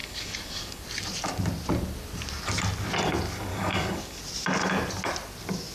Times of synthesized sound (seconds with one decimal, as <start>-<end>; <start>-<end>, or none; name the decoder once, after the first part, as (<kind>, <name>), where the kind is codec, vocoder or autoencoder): 0.0-0.8 (codec, DAC); 3.5-4.2